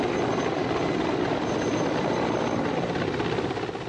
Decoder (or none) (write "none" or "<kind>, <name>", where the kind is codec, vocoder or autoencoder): none